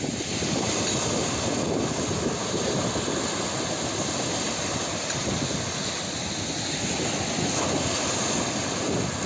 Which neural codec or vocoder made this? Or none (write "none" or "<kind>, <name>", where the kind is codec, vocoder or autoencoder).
none